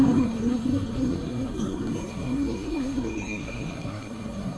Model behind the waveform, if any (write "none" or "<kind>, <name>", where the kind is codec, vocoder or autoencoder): codec, SNAC